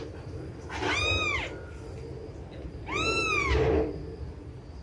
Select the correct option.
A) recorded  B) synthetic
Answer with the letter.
A